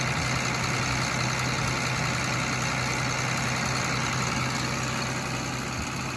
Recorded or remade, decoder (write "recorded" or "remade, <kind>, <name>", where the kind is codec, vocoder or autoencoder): recorded